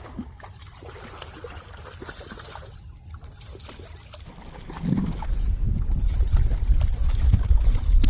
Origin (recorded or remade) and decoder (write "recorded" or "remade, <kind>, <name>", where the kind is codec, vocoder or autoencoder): recorded